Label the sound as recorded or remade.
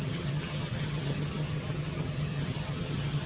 remade